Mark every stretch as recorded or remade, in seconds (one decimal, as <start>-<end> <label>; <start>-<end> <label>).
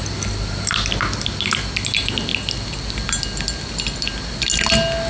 0.0-5.1 recorded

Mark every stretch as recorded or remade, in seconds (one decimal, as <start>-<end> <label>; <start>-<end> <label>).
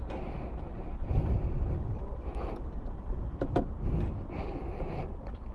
0.0-5.5 recorded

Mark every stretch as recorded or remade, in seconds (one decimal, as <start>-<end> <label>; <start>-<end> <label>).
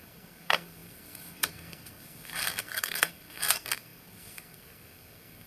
0.0-5.5 remade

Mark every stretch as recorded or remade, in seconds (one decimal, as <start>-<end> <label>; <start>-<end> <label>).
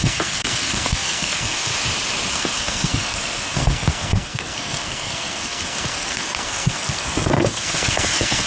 0.0-1.7 remade; 1.7-2.3 recorded; 2.3-8.5 remade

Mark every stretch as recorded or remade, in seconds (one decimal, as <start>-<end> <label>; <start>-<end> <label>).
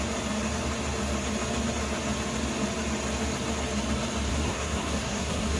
0.0-4.3 recorded; 4.3-5.6 remade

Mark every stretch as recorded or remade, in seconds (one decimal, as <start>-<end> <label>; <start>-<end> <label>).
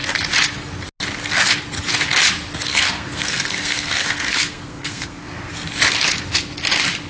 0.0-2.7 recorded; 2.7-5.5 remade; 5.5-7.1 recorded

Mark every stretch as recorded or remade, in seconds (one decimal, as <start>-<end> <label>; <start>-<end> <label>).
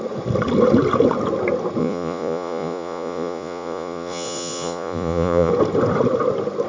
0.0-1.8 recorded; 1.8-5.5 remade; 5.5-6.7 recorded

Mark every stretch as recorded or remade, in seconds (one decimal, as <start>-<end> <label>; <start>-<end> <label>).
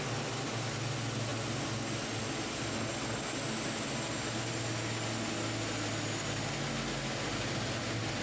0.0-8.2 recorded